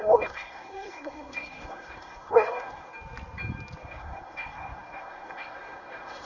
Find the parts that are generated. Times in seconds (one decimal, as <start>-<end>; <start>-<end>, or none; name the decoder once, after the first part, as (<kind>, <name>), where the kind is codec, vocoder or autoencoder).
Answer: 0.0-2.9 (codec, SNAC); 3.8-6.3